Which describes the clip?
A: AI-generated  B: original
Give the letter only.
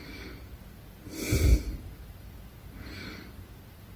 B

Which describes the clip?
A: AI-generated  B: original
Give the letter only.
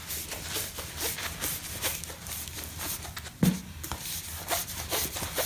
B